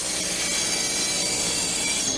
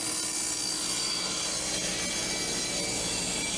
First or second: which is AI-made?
first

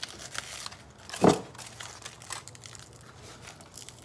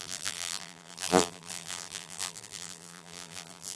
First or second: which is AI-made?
second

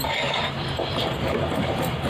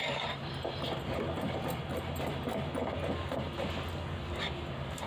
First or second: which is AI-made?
first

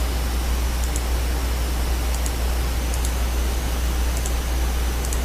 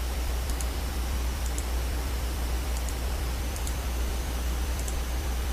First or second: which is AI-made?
second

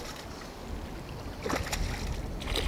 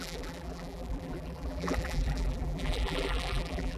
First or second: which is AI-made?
second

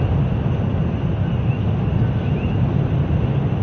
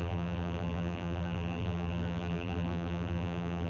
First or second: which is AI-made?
second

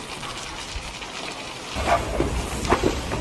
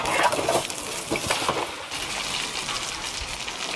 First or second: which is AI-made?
first